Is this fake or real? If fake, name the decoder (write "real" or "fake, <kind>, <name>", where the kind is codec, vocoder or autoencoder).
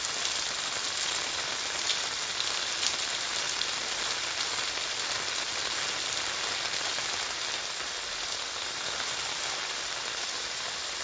real